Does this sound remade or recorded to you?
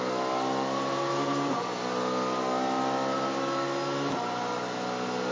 recorded